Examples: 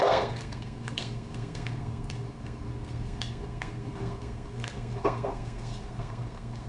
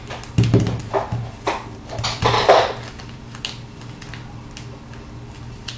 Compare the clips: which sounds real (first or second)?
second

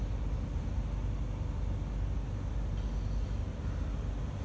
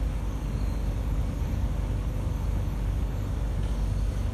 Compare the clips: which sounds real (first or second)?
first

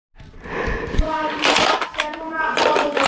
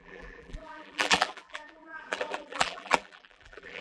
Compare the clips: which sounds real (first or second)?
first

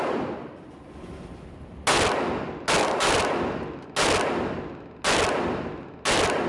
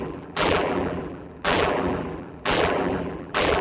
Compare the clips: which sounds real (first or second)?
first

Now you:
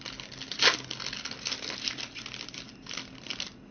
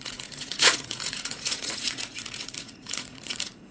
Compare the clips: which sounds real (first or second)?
first